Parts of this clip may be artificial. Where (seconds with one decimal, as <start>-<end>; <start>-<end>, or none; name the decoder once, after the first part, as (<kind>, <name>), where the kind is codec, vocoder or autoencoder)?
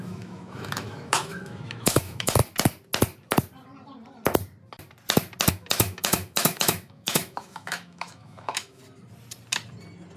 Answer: 0.0-2.4 (autoencoder, DAC-VAE); 5.5-8.8